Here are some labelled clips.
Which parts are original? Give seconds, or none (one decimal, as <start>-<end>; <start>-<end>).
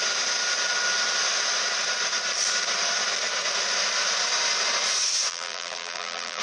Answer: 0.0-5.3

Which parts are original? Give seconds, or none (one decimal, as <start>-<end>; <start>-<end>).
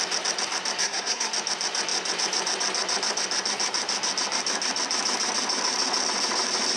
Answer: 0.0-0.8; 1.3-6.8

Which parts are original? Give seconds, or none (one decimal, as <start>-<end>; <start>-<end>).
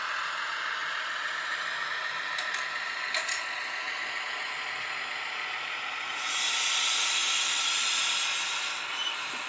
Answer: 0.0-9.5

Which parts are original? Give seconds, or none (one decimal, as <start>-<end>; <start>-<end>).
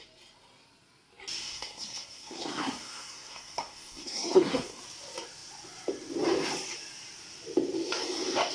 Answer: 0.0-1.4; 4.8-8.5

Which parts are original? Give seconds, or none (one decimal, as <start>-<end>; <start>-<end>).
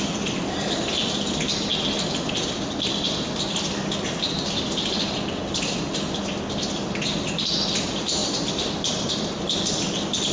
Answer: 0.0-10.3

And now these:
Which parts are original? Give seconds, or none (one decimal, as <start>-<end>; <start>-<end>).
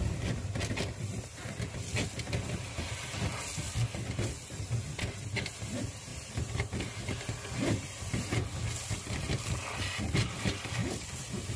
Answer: 0.0-6.1; 6.8-10.8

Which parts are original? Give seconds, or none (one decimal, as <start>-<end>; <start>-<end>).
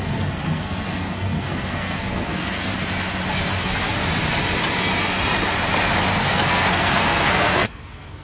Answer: 2.7-3.6; 4.0-6.2